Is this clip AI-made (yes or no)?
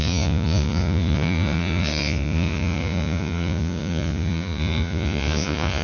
yes